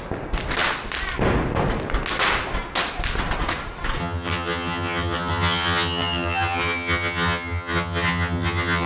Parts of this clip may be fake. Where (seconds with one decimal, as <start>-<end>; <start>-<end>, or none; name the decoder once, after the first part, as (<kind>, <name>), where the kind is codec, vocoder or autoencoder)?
4.0-8.9 (vocoder, HiFi-GAN)